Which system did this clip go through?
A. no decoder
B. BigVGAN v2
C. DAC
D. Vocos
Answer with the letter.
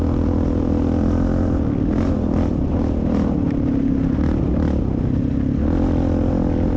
A